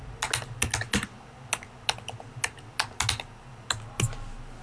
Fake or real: real